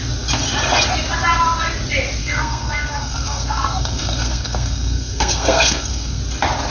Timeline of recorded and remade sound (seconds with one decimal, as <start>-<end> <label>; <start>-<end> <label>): 0.0-2.2 recorded; 2.2-6.2 remade; 6.2-6.7 recorded